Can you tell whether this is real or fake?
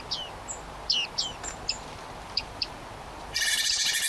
real